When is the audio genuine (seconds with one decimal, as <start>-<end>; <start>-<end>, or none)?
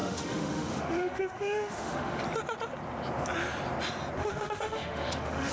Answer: 2.2-4.2